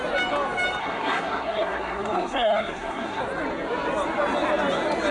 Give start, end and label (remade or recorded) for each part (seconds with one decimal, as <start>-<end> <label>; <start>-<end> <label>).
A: 0.0-0.8 recorded; 0.8-3.2 remade; 3.2-5.1 recorded